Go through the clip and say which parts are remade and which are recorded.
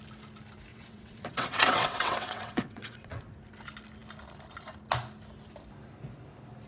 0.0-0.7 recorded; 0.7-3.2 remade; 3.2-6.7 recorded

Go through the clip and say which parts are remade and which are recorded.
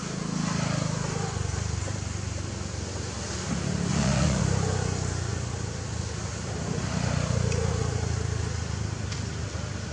0.0-3.9 recorded; 3.9-4.4 remade; 4.4-9.9 recorded